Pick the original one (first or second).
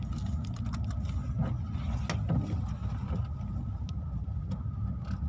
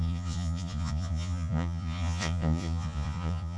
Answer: first